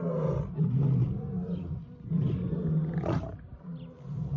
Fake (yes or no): no